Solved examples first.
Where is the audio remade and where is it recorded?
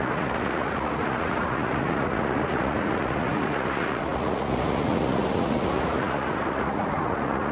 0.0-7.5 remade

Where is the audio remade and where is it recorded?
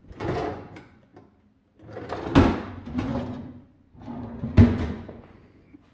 0.0-1.1 remade; 1.1-2.7 recorded; 2.7-5.9 remade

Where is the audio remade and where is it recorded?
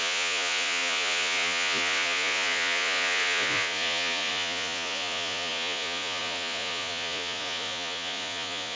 0.0-8.8 remade